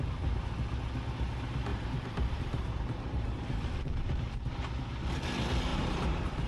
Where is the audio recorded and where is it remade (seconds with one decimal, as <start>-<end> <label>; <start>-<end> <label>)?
0.0-1.7 recorded; 1.7-4.6 remade; 4.6-5.7 recorded; 5.7-6.5 remade